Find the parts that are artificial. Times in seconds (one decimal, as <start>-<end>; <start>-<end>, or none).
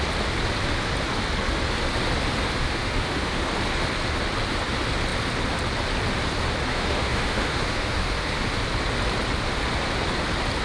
2.6-3.5; 6.7-8.6